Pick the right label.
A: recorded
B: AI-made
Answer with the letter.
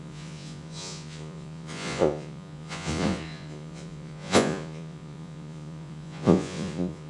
B